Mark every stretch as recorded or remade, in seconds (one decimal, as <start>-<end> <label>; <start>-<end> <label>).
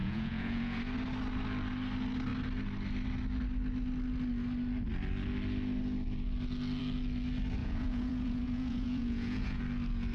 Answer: 0.0-0.8 remade; 0.8-7.6 recorded; 7.6-9.6 remade; 9.6-10.1 recorded